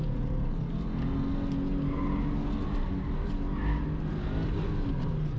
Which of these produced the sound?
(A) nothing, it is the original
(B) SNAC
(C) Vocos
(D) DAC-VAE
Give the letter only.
A